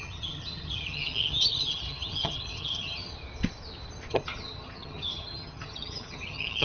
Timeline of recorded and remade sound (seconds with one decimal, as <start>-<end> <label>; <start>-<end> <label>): 0.0-3.1 remade; 3.1-4.1 recorded; 4.1-6.6 remade